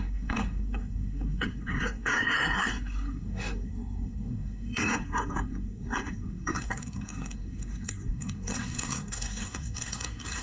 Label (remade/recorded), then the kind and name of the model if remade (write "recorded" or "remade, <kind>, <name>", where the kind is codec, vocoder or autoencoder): remade, codec, SNAC